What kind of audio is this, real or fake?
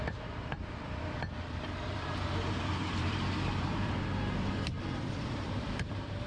fake